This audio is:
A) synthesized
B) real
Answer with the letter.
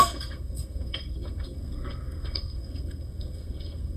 A